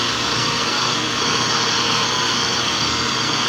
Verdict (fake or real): fake